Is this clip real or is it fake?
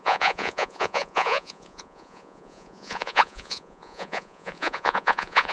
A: fake